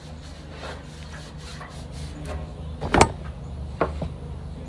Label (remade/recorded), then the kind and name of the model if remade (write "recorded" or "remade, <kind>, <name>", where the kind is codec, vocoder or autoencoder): recorded